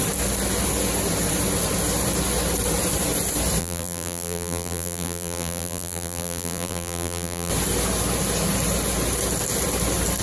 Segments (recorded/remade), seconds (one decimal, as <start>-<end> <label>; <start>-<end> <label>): 0.0-3.6 recorded; 3.6-7.5 remade; 7.5-10.2 recorded